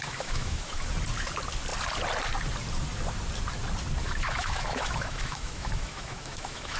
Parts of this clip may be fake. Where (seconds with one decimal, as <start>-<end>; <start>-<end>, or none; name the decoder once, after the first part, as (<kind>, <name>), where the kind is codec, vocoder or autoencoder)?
0.0-0.8 (autoencoder, DAC-VAE); 4.0-6.8